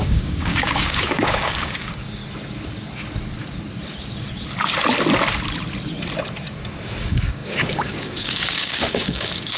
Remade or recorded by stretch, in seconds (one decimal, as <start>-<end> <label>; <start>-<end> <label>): 0.0-2.2 remade; 2.2-7.0 recorded; 7.0-9.6 remade